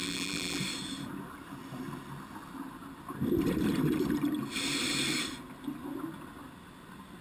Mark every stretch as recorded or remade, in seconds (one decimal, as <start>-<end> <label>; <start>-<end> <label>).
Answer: 0.0-0.6 remade; 0.6-7.2 recorded